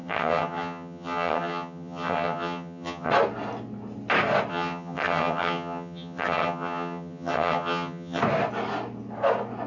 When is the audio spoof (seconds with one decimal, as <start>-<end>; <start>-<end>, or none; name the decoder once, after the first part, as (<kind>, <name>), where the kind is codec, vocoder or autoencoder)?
0.0-3.1 (vocoder, HiFi-GAN); 4.5-8.2